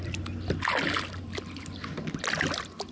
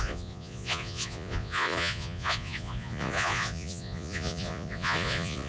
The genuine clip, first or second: first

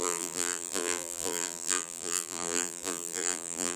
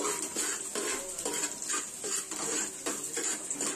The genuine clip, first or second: second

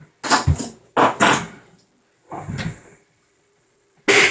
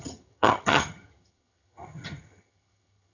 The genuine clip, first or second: first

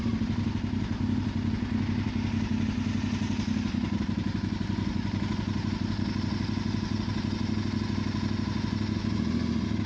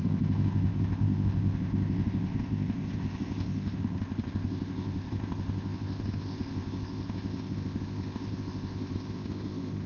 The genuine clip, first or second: first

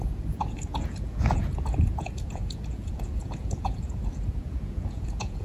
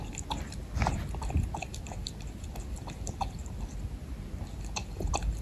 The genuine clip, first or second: second